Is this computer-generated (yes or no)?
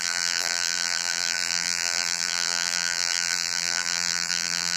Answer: yes